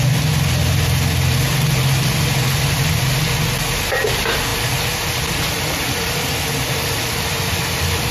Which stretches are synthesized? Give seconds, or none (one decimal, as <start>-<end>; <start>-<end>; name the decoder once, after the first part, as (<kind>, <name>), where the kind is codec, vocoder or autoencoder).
none